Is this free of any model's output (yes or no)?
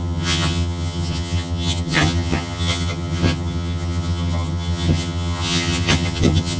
no